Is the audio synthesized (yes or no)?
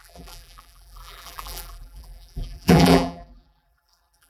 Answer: yes